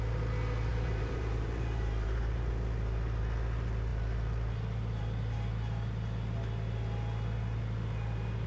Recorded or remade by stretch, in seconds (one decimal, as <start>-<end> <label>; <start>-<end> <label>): 0.0-0.7 recorded; 0.7-2.5 remade; 2.5-8.5 recorded